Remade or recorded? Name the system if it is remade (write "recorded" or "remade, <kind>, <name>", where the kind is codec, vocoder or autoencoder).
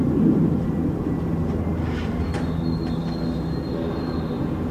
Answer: recorded